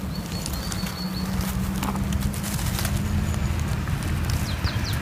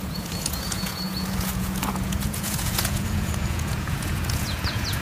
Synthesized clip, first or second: second